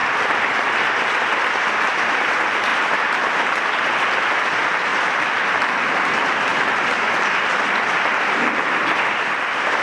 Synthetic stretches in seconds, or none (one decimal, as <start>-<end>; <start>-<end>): 0.0-0.9; 2.7-4.4; 4.9-5.7